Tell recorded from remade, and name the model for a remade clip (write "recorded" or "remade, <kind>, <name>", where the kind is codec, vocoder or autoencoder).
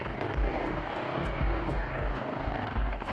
remade, codec, DAC